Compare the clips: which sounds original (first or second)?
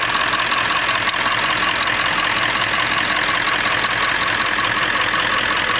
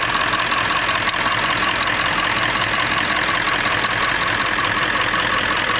first